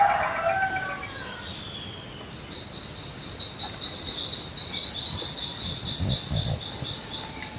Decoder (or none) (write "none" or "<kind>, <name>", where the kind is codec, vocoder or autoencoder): none